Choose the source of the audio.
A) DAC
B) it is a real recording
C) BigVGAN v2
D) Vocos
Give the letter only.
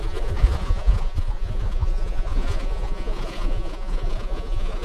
D